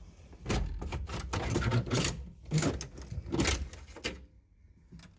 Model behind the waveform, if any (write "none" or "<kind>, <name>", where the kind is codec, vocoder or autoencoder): none